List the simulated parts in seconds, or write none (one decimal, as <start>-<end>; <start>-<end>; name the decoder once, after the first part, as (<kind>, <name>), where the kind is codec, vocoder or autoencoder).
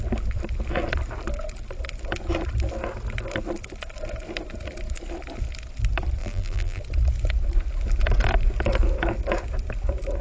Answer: 6.2-6.8 (vocoder, BigVGAN v2)